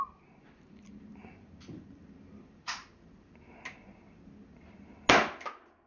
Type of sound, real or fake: real